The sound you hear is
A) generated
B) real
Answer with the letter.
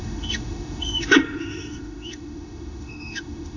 A